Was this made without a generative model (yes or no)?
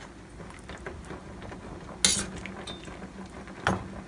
yes